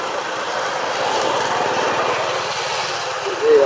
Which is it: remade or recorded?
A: recorded